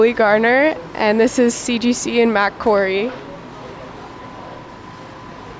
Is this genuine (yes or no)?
yes